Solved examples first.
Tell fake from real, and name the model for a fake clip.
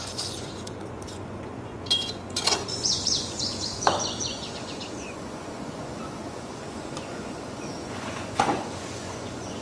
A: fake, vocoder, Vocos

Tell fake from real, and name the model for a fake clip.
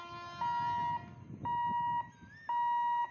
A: real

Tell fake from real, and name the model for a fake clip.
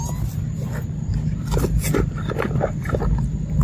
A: real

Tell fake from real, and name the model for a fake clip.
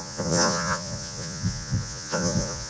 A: fake, vocoder, Vocos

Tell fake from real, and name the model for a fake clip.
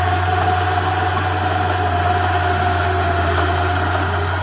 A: real